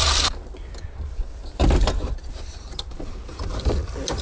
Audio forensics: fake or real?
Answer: fake